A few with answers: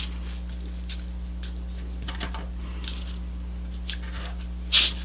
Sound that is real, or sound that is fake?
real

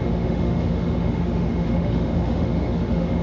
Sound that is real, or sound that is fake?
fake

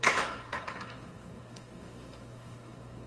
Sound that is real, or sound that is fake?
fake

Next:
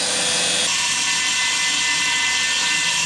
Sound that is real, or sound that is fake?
real